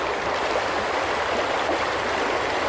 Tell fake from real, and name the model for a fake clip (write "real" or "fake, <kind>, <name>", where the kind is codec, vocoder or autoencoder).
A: real